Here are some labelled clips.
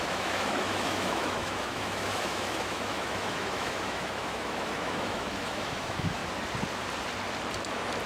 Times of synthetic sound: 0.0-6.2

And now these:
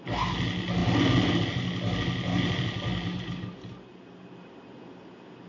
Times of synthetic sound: none

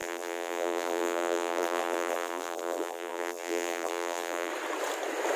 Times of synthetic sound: 0.0-4.5